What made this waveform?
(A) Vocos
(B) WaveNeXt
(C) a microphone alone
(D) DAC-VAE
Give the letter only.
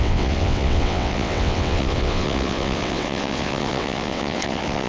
B